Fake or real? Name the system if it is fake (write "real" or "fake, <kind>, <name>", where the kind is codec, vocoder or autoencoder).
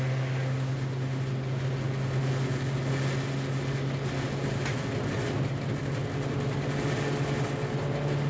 real